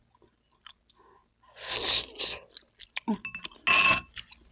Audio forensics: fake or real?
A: real